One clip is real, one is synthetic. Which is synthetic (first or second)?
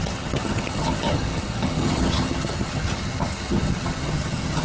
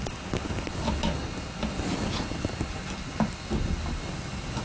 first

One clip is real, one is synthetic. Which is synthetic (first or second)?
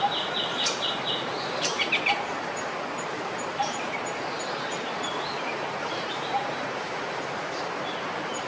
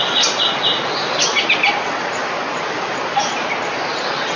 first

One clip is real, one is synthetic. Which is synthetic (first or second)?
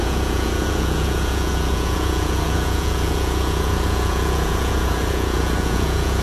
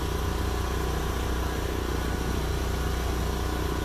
first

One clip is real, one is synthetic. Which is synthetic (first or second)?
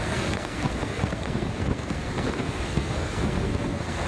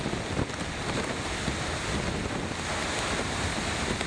first